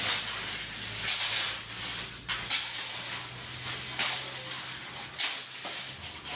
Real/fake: real